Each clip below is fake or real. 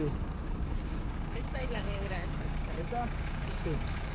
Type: fake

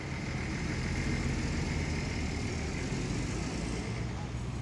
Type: real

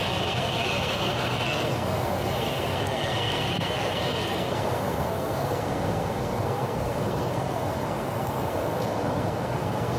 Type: fake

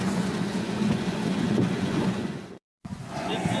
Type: fake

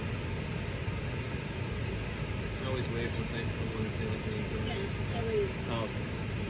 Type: real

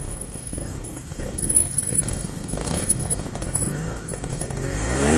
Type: fake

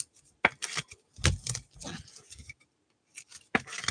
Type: real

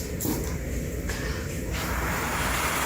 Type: fake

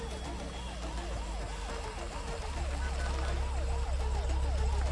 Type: real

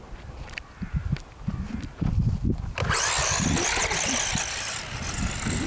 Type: real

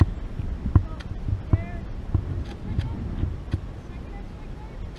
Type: real